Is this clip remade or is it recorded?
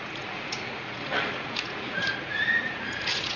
remade